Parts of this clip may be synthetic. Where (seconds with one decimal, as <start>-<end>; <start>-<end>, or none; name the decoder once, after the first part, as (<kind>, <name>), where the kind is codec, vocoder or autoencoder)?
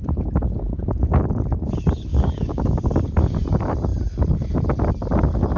2.1-2.8 (codec, DAC)